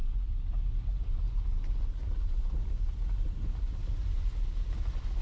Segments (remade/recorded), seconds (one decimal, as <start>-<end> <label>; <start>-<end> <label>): 0.0-5.2 recorded